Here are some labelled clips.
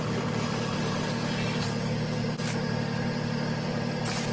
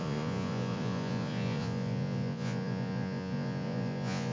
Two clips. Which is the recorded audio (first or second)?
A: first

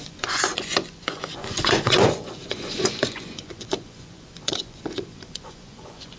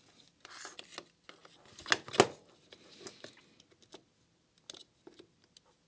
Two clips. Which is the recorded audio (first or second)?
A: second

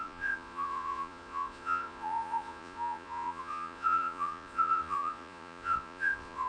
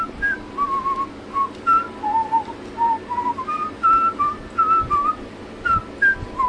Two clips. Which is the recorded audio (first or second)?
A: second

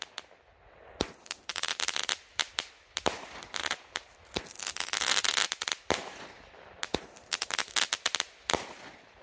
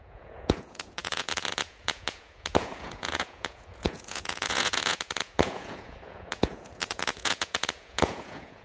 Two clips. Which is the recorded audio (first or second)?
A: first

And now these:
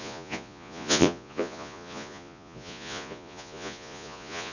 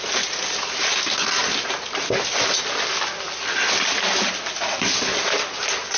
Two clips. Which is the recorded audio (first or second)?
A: second